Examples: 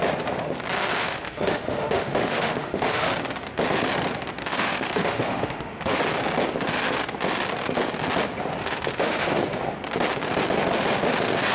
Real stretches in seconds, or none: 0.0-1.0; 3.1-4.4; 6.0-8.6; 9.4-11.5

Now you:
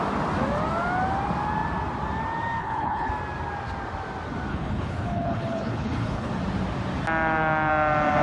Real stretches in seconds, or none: 0.0-2.6; 3.1-4.5; 6.3-8.2

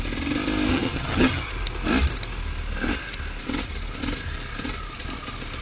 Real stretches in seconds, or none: 0.0-0.7; 1.5-5.6

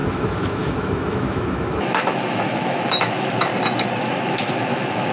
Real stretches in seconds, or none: 3.5-4.0

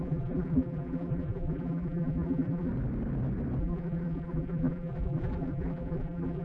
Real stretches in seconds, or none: 2.7-3.6

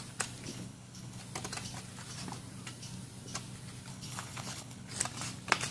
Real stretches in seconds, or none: 0.0-0.5; 1.2-3.9; 4.9-5.7

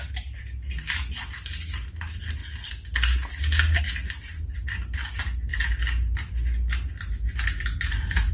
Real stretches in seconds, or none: 0.0-8.3